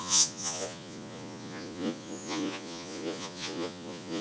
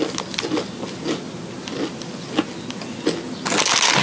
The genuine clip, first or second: second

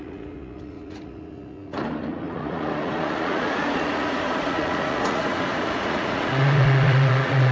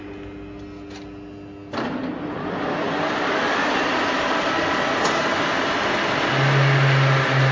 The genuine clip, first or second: second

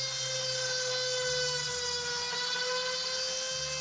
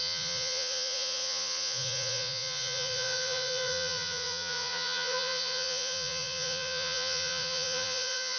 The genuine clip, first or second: first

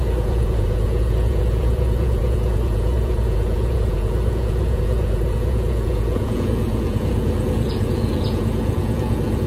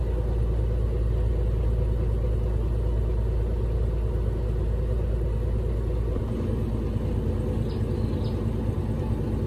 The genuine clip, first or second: second